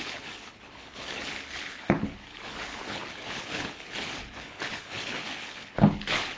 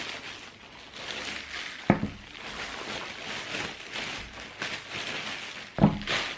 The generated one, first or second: first